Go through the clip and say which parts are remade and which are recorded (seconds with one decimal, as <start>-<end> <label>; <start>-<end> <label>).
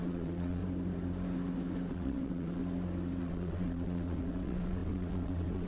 0.0-0.6 remade; 0.6-1.9 recorded; 1.9-2.6 remade; 2.6-3.2 recorded; 3.2-5.7 remade